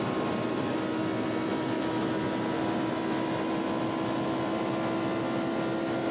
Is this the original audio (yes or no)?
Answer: yes